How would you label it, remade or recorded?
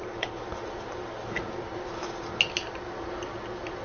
recorded